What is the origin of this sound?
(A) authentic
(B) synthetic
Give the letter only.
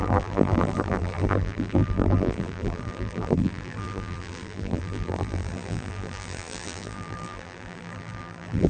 B